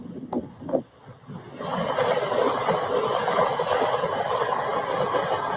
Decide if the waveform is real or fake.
real